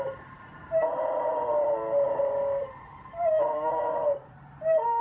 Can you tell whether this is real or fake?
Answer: fake